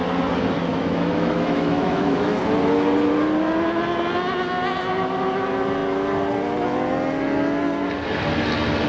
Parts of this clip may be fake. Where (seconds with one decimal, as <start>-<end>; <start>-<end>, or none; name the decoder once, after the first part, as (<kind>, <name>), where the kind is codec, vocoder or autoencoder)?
0.7-2.4 (autoencoder, DAC-VAE)